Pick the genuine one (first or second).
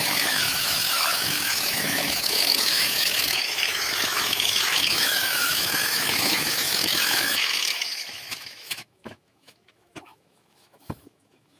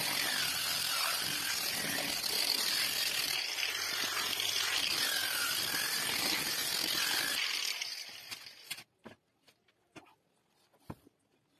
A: second